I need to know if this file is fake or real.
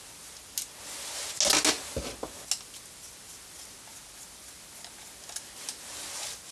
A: real